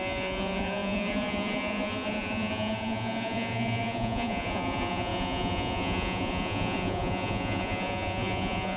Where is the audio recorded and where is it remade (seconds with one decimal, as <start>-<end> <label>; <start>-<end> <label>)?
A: 0.0-8.8 remade

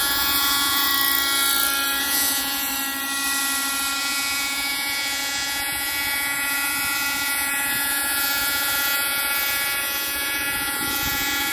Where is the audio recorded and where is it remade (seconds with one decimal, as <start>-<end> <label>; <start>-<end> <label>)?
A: 0.0-0.9 remade; 0.9-2.0 recorded; 2.0-2.7 remade; 2.7-4.0 recorded; 4.0-11.5 remade

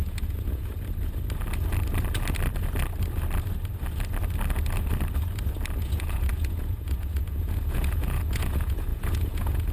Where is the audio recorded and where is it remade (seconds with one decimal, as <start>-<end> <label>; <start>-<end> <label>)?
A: 0.0-0.7 remade; 0.7-5.8 recorded; 5.8-9.7 remade

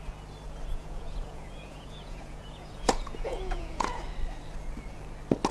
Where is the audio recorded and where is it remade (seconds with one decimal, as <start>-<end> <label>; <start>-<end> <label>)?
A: 0.0-0.7 recorded; 0.7-4.0 remade; 4.0-5.5 recorded

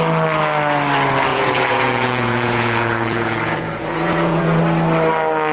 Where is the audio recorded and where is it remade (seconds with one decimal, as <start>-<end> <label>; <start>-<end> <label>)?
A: 0.0-1.3 recorded; 1.3-4.6 remade; 4.6-5.5 recorded

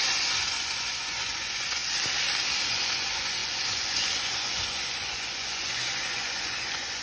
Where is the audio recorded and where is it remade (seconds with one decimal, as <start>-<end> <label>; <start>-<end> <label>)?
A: 0.0-1.8 remade; 1.8-2.7 recorded; 2.7-7.0 remade

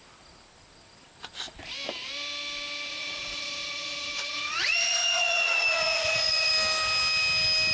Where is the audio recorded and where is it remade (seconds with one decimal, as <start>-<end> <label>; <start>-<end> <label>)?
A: 0.0-2.9 recorded; 2.9-6.5 remade; 6.5-7.7 recorded